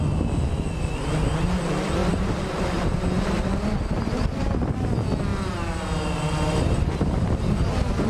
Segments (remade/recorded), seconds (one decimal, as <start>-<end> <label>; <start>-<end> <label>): 0.0-2.0 recorded; 2.0-2.9 remade; 2.9-5.3 recorded; 5.3-8.1 remade